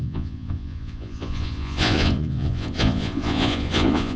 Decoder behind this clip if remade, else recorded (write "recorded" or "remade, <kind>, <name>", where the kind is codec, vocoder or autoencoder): remade, vocoder, Vocos